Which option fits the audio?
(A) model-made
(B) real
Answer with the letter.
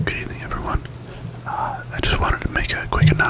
B